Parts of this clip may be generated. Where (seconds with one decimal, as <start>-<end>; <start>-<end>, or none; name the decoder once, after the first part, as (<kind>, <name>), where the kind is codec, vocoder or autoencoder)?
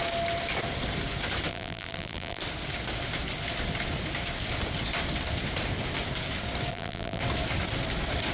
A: 1.5-2.4 (vocoder, BigVGAN v2); 6.7-7.2